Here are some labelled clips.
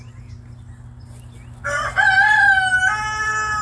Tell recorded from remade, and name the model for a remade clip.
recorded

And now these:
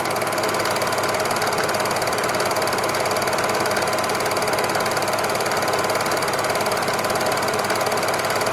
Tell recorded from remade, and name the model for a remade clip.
recorded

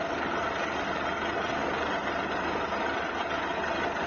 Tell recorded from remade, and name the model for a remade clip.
recorded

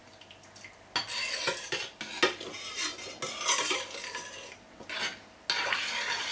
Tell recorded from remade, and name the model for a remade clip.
recorded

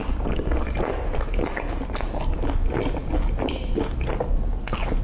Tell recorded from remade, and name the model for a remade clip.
recorded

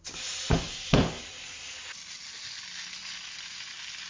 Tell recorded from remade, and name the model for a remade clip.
recorded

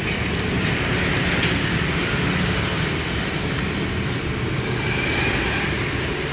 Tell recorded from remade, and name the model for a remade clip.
recorded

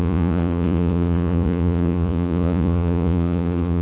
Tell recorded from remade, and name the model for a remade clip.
remade, vocoder, Vocos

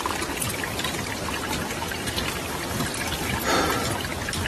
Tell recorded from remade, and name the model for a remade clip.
recorded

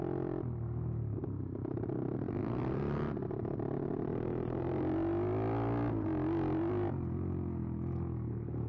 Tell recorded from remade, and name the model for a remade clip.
recorded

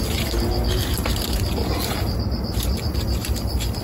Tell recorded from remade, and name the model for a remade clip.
recorded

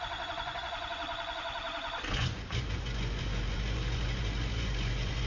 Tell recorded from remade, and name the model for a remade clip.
remade, vocoder, Vocos